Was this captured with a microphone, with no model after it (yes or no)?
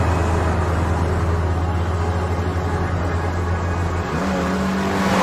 yes